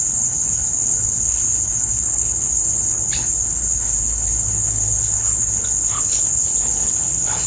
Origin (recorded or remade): remade